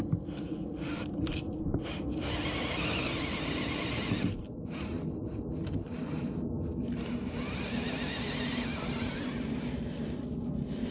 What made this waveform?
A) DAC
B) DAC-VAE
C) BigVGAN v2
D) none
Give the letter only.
D